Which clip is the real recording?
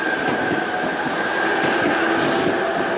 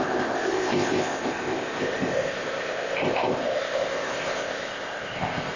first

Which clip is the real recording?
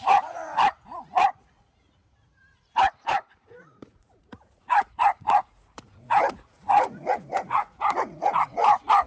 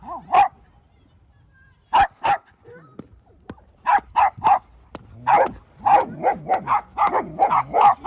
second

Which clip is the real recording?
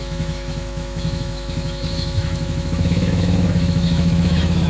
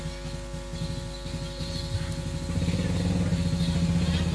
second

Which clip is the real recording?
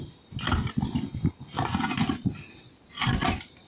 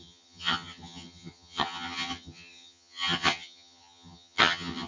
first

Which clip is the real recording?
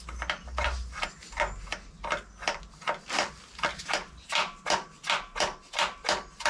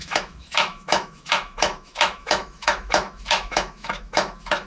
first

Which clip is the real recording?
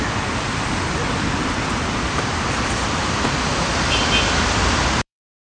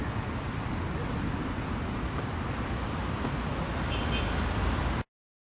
second